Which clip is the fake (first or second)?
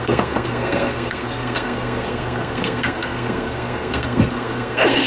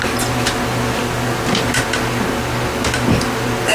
first